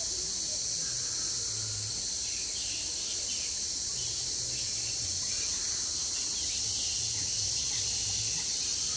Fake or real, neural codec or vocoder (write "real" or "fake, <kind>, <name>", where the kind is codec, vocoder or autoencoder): real